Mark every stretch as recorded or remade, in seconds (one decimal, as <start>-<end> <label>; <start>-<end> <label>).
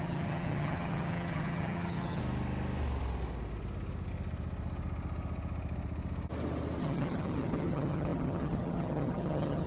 0.0-2.2 remade; 2.2-6.8 recorded; 6.8-9.7 remade